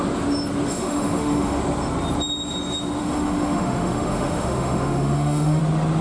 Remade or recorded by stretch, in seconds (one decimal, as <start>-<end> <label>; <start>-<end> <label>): 0.0-0.7 recorded; 0.7-1.6 remade; 1.6-3.0 recorded; 3.0-5.6 remade; 5.6-6.0 recorded